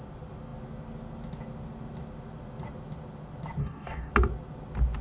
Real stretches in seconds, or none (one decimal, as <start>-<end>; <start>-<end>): 0.0-3.6; 4.1-5.0